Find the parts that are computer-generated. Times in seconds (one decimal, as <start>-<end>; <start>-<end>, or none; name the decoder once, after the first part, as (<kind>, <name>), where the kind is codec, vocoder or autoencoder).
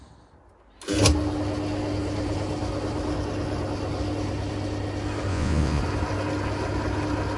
5.3-5.8 (vocoder, Vocos)